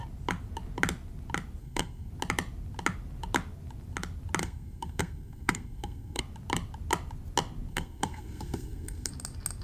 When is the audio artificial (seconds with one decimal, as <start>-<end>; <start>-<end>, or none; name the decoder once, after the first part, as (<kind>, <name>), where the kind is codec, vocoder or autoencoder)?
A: 1.6-2.1 (codec, SNAC); 4.4-6.2; 7.7-9.1